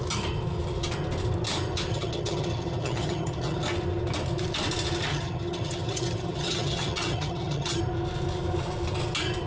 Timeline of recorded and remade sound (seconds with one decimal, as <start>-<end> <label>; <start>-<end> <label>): 0.0-1.9 recorded; 1.9-3.6 remade; 3.6-5.1 recorded; 5.1-7.8 remade; 7.8-9.5 recorded